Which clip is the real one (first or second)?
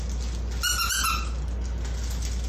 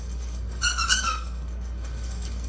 first